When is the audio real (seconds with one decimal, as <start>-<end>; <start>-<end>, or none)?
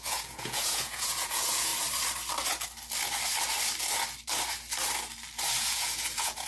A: 1.7-5.6